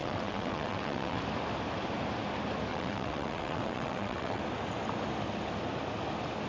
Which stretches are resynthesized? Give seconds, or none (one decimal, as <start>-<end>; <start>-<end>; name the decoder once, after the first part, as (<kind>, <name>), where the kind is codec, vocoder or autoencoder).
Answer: 0.0-1.2 (vocoder, WaveNeXt); 2.7-4.4